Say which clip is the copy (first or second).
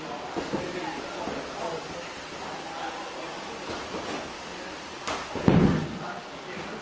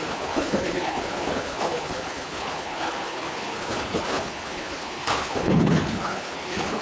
second